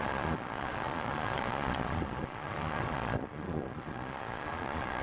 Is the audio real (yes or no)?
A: no